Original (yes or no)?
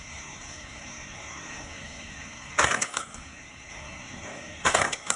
no